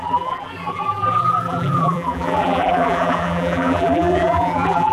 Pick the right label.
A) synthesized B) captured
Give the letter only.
A